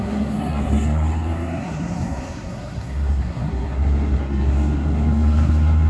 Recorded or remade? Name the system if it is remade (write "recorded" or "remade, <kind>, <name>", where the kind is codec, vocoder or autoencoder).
remade, codec, SNAC